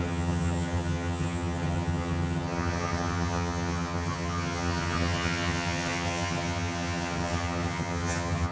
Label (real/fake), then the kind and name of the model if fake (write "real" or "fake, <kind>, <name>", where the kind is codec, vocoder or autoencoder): fake, vocoder, HiFi-GAN